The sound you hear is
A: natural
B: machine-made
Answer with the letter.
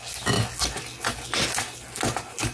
A